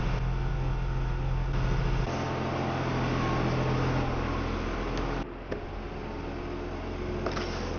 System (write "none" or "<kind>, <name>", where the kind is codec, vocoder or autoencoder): none